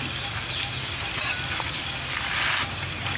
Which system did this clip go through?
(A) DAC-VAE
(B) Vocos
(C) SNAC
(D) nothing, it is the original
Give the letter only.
D